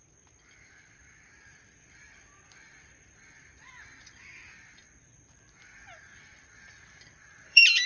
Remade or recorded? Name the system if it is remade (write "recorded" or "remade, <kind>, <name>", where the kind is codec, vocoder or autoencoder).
remade, vocoder, BigVGAN v2